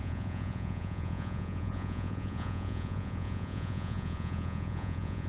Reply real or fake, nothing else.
fake